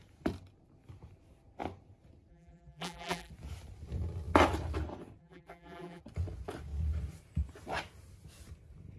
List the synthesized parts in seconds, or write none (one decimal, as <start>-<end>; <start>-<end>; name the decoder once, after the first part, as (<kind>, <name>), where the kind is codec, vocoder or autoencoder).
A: 2.3-3.3 (vocoder, BigVGAN v2); 5.2-6.0